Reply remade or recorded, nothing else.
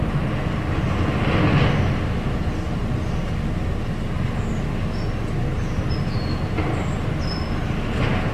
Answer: recorded